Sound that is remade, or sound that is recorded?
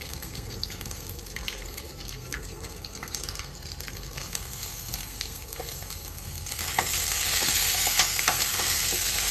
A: remade